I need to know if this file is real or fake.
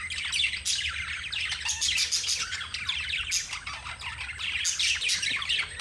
real